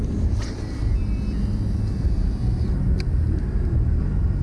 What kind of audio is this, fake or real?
real